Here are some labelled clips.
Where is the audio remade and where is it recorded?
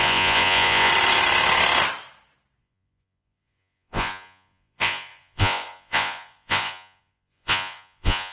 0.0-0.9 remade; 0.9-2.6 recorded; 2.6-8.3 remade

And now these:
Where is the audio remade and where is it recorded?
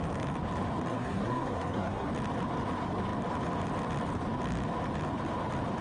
0.0-0.9 recorded; 0.9-2.1 remade; 2.1-5.8 recorded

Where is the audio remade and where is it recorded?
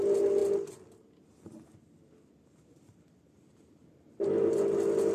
0.0-5.1 recorded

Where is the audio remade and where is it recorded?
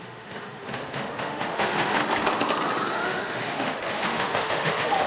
0.0-2.0 remade; 2.0-2.9 recorded; 2.9-5.1 remade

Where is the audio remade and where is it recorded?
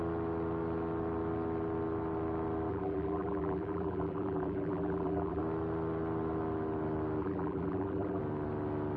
0.0-2.7 recorded; 2.7-5.4 remade; 5.4-7.2 recorded; 7.2-8.2 remade; 8.2-9.0 recorded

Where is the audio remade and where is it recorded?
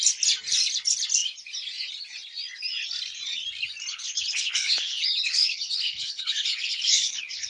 0.0-3.9 recorded; 3.9-7.5 remade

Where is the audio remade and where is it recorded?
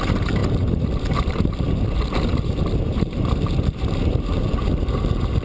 0.0-5.4 remade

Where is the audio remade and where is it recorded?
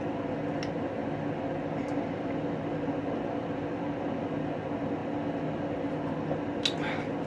0.0-7.3 recorded